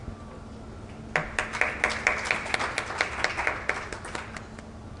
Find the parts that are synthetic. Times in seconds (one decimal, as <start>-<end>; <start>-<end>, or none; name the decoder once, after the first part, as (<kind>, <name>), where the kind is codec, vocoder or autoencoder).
none